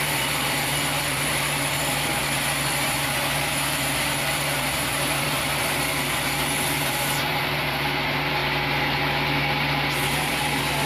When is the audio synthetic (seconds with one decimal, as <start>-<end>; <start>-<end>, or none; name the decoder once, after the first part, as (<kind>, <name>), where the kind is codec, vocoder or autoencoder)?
0.0-2.2 (vocoder, BigVGAN v2); 2.7-8.4; 10.1-10.9